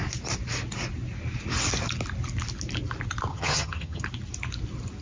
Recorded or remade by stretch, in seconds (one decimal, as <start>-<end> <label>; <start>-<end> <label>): 0.0-3.3 recorded; 3.3-4.0 remade; 4.0-5.0 recorded